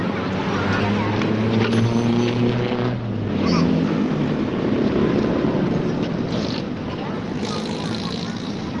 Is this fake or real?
real